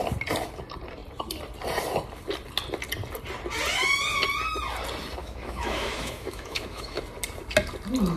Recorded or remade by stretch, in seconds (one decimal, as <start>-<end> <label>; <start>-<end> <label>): 0.0-5.2 recorded; 5.2-7.0 remade; 7.0-8.2 recorded